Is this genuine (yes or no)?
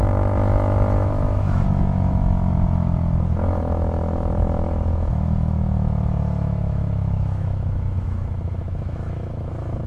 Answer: no